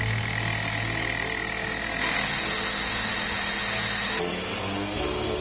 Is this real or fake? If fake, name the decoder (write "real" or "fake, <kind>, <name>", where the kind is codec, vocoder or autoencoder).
real